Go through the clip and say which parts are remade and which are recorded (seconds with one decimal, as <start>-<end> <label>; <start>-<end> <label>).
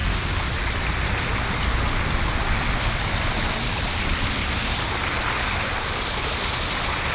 0.0-7.1 recorded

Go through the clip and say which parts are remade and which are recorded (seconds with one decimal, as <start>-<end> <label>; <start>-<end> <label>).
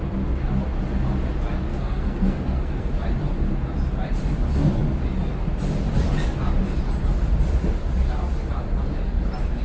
0.0-1.7 recorded; 1.7-2.9 remade; 2.9-9.6 recorded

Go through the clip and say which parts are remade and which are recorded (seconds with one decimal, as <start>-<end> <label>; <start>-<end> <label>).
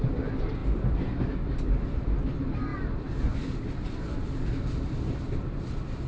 0.0-6.1 recorded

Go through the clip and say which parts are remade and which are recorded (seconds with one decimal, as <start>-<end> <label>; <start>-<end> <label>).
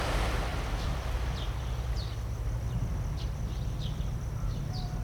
0.0-5.0 recorded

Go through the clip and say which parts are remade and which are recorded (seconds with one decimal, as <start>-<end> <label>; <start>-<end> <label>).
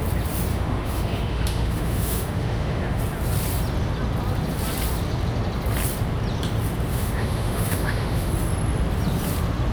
0.0-0.5 recorded; 0.5-3.0 remade; 3.0-6.9 recorded; 6.9-8.3 remade; 8.3-9.7 recorded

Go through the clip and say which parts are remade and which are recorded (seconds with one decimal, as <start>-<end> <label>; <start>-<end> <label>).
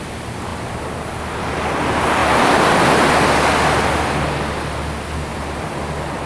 0.0-2.2 recorded; 2.2-2.8 remade; 2.8-5.3 recorded; 5.3-6.3 remade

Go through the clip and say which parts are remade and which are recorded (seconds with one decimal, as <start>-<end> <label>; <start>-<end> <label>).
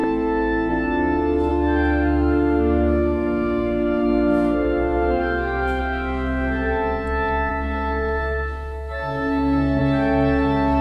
0.0-1.5 recorded; 1.5-5.8 remade; 5.8-7.5 recorded; 7.5-9.8 remade; 9.8-10.8 recorded